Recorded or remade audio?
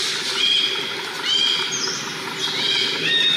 recorded